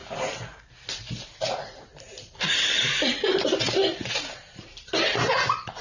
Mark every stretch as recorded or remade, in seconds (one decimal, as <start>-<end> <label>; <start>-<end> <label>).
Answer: 0.0-2.5 recorded; 2.5-5.8 remade